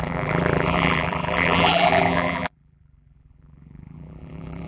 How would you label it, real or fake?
fake